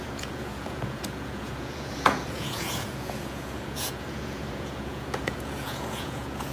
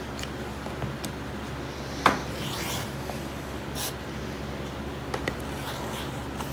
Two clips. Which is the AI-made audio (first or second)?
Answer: first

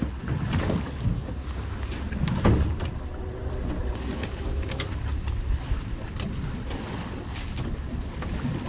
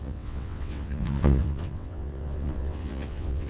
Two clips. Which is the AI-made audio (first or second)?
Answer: second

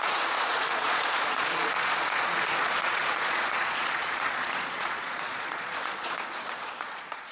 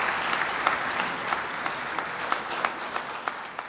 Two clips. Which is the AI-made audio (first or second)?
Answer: first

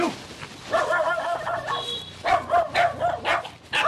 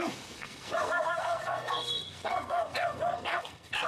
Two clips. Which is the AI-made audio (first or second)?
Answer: second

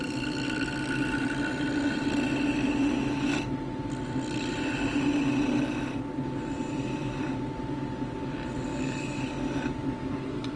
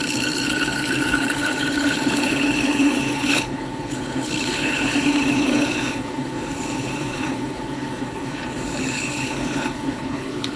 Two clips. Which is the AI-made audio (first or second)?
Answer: second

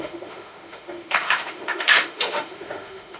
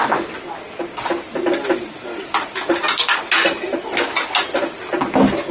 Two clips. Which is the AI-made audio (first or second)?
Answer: first